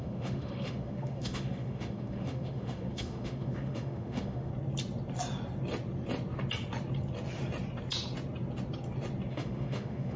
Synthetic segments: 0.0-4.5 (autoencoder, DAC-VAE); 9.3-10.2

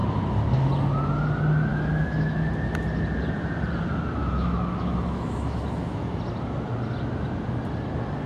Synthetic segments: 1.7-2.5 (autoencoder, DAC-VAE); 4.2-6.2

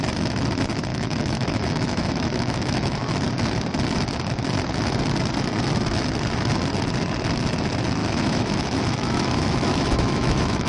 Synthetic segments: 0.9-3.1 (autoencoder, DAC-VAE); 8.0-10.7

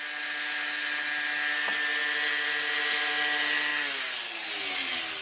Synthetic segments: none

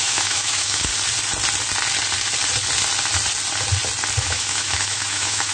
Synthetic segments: 0.0-0.9 (autoencoder, DAC-VAE); 4.2-5.5

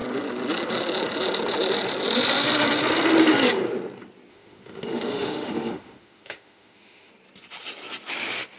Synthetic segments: 4.3-7.1 (autoencoder, DAC-VAE)

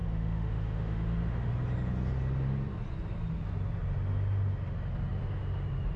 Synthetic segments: 0.0-1.5 (autoencoder, DAC-VAE)

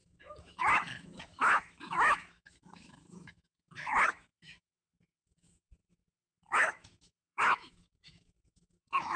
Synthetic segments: 0.0-9.2 (autoencoder, DAC-VAE)